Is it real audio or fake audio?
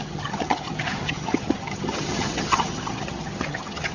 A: fake